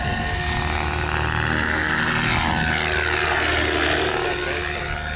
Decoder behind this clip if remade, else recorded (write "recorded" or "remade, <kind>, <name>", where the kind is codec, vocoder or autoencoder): recorded